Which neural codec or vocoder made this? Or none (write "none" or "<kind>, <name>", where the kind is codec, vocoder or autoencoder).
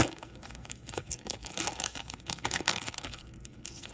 codec, SNAC